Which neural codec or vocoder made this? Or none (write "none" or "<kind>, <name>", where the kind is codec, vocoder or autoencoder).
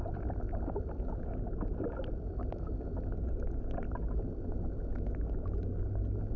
none